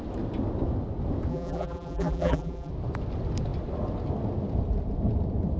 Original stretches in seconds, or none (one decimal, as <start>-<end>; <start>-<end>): 0.0-1.3; 2.7-5.6